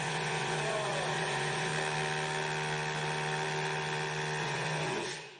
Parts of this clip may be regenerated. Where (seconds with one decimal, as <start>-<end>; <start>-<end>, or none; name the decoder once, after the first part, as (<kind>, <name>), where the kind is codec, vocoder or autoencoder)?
0.0-1.7 (vocoder, Vocos); 4.4-5.4